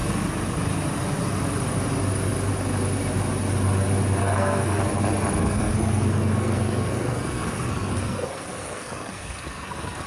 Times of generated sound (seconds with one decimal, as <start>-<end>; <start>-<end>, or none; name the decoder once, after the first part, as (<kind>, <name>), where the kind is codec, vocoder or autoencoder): 4.2-4.8 (codec, SNAC); 5.4-10.1